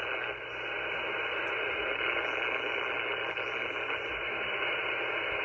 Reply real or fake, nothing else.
real